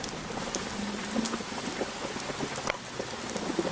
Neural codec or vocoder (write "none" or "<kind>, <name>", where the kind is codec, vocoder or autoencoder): none